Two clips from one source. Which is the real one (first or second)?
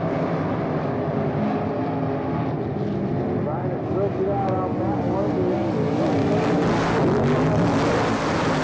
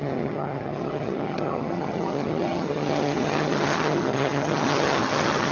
first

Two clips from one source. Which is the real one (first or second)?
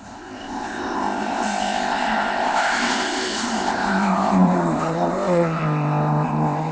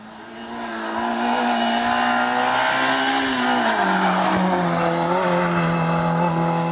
second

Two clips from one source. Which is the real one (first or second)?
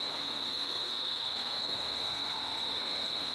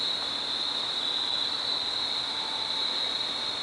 second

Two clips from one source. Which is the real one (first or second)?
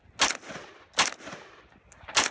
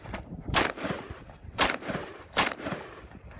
first